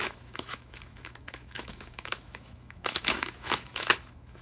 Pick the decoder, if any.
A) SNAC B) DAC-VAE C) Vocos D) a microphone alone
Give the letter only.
B